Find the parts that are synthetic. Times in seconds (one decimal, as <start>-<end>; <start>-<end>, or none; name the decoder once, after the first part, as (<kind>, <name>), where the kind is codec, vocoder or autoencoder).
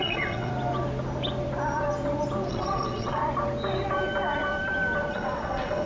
0.0-0.5 (vocoder, WaveNeXt); 2.5-3.2; 5.1-5.9